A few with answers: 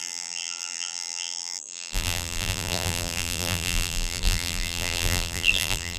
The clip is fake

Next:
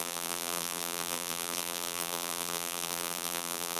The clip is fake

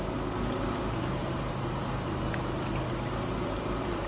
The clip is fake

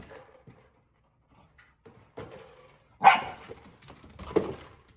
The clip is real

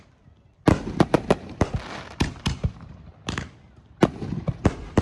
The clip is fake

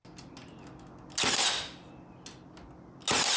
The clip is real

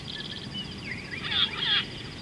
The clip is real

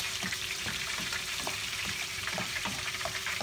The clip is fake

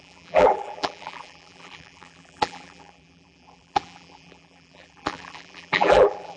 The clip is fake